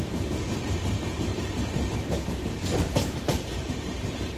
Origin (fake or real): fake